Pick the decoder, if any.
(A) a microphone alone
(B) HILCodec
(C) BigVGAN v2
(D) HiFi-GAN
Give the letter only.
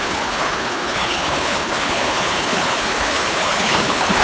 B